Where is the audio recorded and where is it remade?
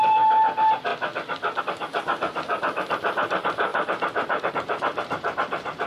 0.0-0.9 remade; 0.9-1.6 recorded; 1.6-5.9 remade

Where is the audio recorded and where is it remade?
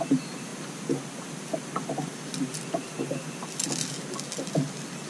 0.0-5.1 recorded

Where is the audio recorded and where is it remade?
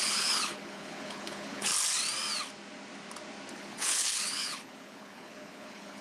0.0-1.7 remade; 1.7-3.5 recorded; 3.5-6.0 remade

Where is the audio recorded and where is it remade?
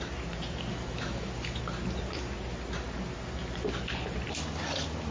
0.0-0.7 recorded; 0.7-1.6 remade; 1.6-5.1 recorded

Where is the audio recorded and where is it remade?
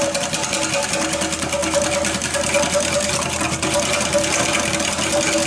0.0-5.5 recorded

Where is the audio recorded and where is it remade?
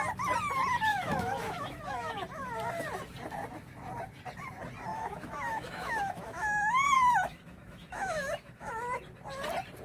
0.0-0.9 recorded; 0.9-2.1 remade; 2.1-4.9 recorded; 4.9-8.7 remade; 8.7-9.8 recorded